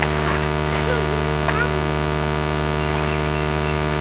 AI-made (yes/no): no